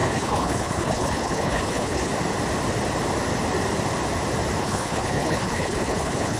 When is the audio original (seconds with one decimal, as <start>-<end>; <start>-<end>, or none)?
2.1-4.6